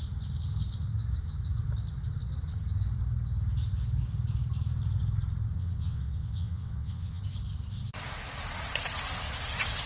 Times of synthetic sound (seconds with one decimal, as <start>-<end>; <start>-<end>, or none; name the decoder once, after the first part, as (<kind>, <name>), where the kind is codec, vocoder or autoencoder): 5.5-7.2 (vocoder, WaveNeXt)